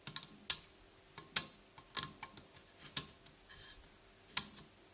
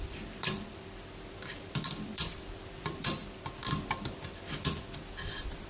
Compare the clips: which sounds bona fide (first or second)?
first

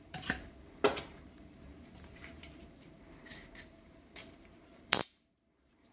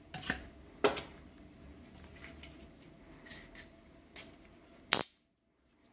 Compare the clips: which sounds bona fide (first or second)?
second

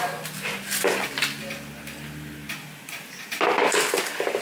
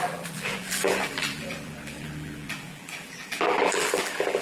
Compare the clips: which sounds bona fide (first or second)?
first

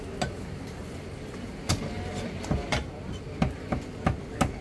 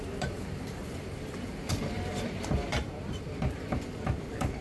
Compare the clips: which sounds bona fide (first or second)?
first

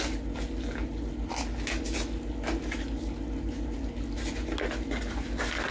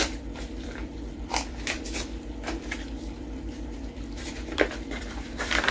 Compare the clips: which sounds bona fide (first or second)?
first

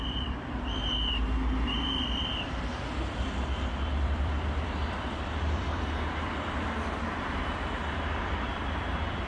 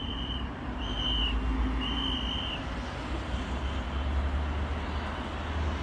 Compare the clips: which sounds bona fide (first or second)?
second